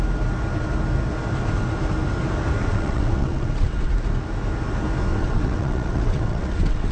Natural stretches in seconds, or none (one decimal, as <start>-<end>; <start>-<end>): 0.0-2.6; 3.9-5.1